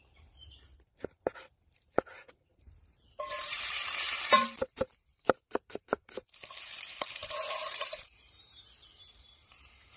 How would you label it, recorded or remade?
remade